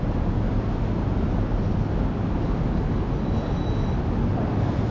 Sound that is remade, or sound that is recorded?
recorded